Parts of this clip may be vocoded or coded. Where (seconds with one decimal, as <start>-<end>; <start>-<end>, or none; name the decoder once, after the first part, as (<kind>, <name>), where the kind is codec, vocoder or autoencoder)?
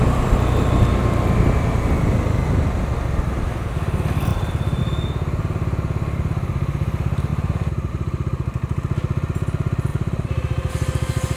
4.3-4.8 (vocoder, BigVGAN v2); 7.3-7.9; 9.9-10.7